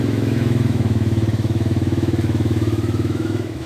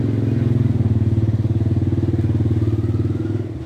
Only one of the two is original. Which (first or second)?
second